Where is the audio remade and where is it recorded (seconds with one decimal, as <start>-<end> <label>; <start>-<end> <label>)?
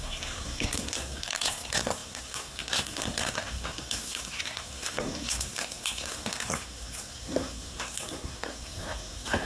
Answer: 0.0-9.5 remade